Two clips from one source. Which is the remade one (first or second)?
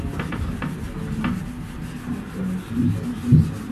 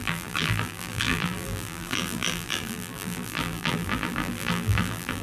second